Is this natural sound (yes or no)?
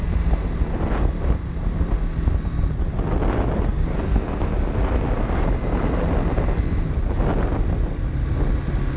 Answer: yes